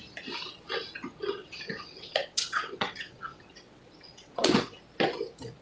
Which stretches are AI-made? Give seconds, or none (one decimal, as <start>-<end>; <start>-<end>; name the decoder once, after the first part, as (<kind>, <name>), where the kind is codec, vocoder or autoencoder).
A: 1.4-4.8 (vocoder, WaveNeXt)